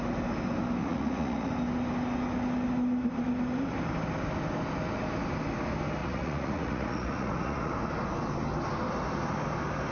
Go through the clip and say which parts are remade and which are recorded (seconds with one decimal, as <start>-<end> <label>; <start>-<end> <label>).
0.0-0.8 recorded; 0.8-1.5 remade; 1.5-6.0 recorded; 6.0-7.7 remade; 7.7-9.9 recorded